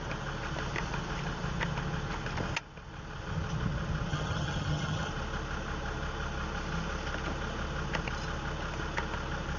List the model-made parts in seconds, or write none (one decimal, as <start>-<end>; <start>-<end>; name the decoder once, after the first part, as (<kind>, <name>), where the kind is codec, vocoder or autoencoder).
4.1-5.1 (vocoder, HiFi-GAN)